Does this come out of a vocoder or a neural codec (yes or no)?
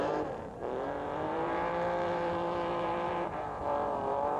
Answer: yes